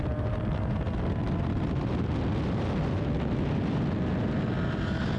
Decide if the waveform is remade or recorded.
recorded